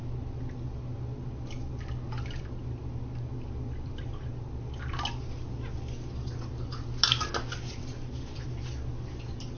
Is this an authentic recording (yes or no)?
yes